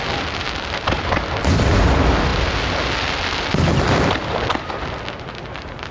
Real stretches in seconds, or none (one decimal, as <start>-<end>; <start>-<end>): 0.0-5.9